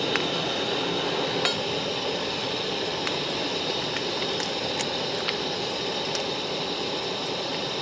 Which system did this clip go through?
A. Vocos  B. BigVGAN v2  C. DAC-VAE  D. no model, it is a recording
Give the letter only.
D